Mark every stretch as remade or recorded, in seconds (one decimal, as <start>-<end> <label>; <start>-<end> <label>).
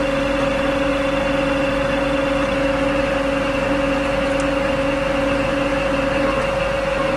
0.0-7.2 recorded